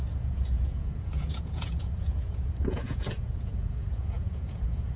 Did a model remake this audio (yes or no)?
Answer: yes